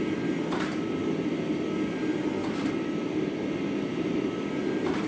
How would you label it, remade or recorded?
recorded